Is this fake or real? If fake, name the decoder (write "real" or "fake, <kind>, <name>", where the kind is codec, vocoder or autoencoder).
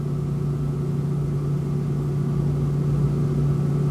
real